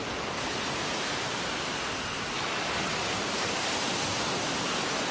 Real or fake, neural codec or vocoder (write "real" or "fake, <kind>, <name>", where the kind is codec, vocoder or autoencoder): fake, vocoder, BigVGAN v2